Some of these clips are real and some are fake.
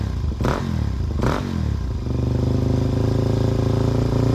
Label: real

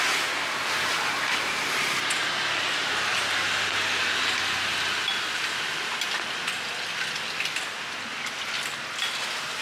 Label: real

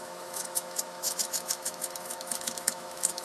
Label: fake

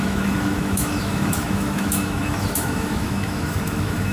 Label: fake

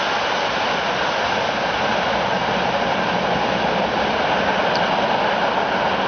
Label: real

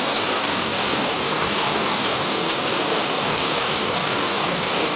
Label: fake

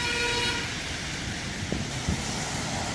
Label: real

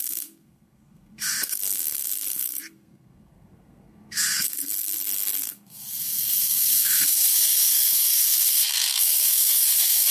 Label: fake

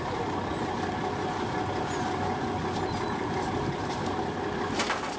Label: real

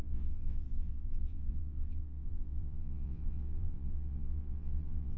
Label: fake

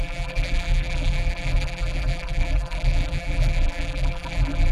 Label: fake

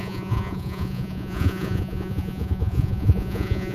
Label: fake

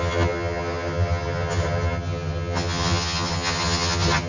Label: fake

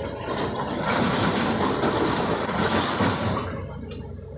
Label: real